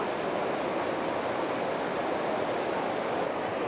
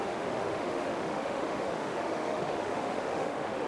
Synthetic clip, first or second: second